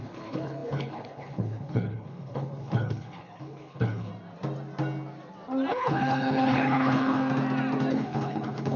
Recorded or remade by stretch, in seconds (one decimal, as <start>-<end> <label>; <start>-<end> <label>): 0.0-4.1 remade; 4.1-5.7 recorded; 5.7-7.2 remade; 7.2-7.9 recorded; 7.9-8.8 remade